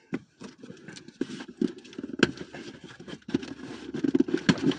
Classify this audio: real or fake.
real